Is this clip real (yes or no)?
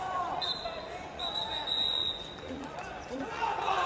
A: no